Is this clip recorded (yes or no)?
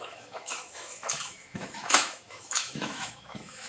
no